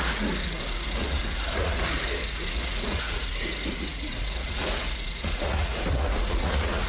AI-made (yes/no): yes